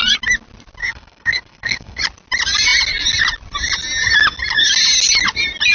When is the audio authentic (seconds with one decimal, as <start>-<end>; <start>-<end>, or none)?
0.0-0.8; 2.0-5.7